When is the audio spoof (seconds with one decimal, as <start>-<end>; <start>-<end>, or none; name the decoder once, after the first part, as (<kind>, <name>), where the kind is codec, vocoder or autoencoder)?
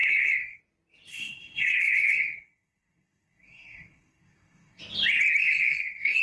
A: 0.0-0.6 (codec, SNAC); 1.1-4.8; 5.4-6.2